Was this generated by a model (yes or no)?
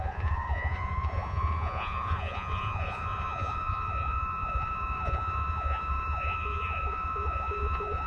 yes